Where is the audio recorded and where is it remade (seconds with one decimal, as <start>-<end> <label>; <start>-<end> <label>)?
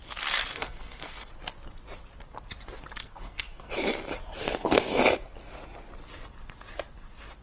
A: 0.0-0.5 recorded; 0.5-1.3 remade; 1.3-3.0 recorded; 3.0-3.7 remade; 3.7-4.4 recorded; 4.4-5.0 remade; 5.0-7.4 recorded